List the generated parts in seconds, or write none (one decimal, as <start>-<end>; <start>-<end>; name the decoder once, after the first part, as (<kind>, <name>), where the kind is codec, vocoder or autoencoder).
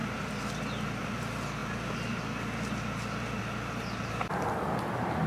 none